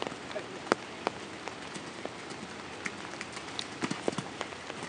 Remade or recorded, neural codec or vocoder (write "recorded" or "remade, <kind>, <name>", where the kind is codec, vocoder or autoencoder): recorded